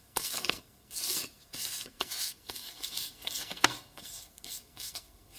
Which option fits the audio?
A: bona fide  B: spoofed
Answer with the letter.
B